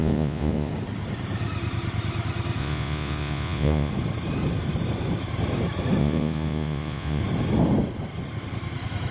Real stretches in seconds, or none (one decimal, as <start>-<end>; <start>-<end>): 0.7-2.6; 3.9-6.0; 7.2-9.1